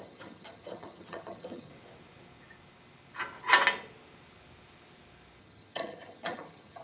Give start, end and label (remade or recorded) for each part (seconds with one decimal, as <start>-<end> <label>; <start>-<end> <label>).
0.0-1.7 remade; 1.7-5.4 recorded; 5.4-6.8 remade